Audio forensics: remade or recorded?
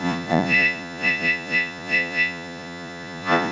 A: remade